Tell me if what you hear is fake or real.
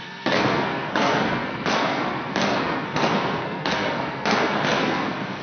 fake